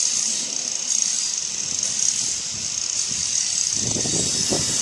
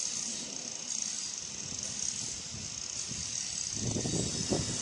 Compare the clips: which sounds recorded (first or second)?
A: second